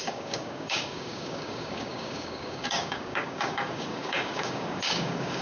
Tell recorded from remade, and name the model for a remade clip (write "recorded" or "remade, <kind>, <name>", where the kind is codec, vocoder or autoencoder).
remade, codec, DAC